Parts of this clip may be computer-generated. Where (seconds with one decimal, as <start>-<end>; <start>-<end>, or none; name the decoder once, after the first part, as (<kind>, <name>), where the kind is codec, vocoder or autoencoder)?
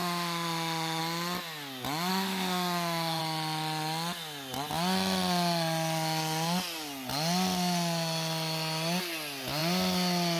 0.0-1.0 (autoencoder, DAC-VAE); 2.1-3.2